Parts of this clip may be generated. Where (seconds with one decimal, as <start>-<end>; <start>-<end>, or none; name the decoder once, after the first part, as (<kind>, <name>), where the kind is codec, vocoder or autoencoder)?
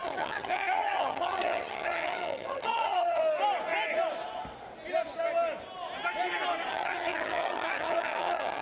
0.0-3.2 (vocoder, HiFi-GAN); 6.7-8.6